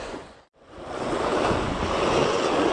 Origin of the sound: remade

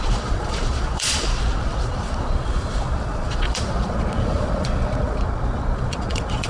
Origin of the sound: remade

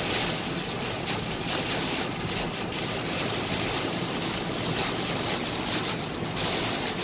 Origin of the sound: recorded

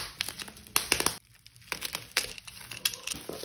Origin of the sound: recorded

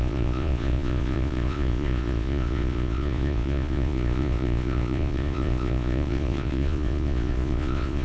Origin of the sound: remade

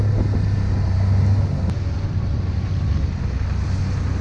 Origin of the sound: recorded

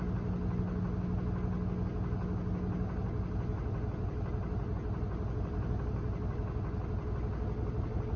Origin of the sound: recorded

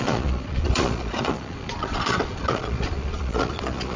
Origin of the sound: remade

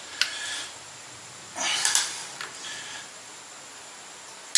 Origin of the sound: recorded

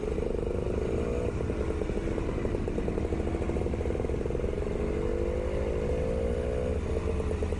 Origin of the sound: recorded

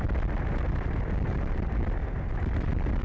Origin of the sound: recorded